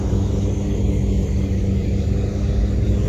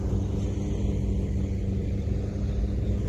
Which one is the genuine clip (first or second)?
second